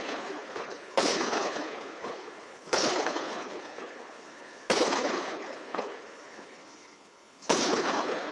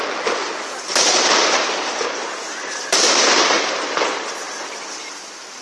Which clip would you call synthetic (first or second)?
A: first